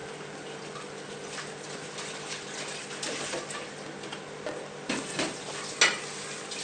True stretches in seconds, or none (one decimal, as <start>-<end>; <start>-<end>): 0.0-6.6